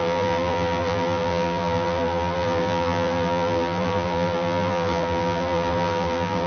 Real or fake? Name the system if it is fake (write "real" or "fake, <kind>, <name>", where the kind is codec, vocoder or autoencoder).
fake, vocoder, BigVGAN v2